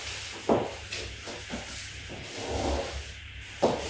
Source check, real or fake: real